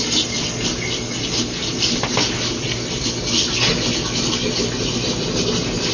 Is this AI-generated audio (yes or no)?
no